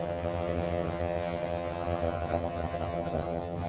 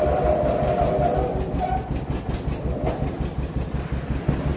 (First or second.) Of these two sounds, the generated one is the first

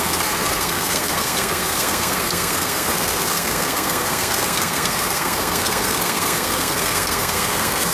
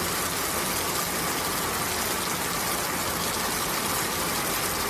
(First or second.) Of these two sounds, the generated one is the first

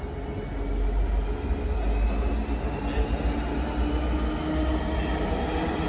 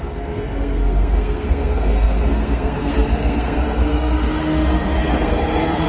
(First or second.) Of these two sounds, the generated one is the second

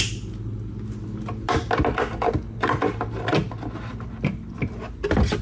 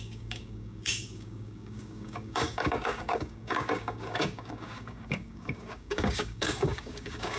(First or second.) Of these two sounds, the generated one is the second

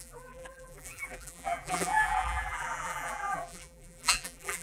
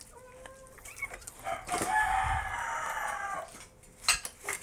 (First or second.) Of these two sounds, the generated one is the first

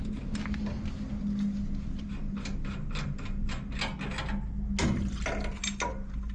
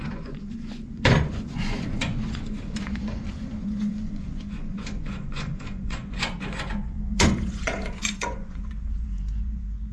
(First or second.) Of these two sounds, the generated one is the second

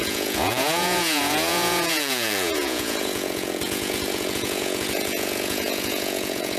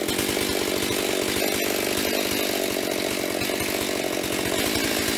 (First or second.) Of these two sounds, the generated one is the first